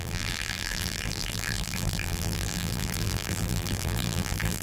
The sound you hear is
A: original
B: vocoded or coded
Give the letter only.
B